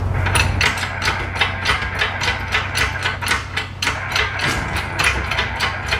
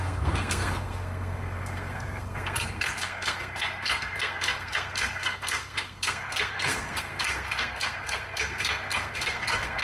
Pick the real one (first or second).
first